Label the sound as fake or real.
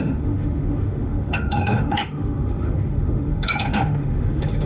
fake